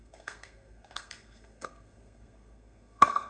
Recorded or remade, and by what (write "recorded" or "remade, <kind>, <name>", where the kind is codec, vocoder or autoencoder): remade, codec, SNAC